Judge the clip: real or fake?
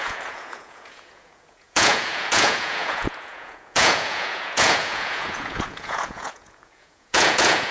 fake